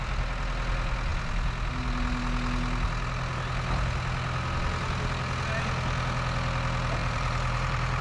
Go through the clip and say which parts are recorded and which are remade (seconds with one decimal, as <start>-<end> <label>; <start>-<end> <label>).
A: 0.0-7.0 recorded; 7.0-8.0 remade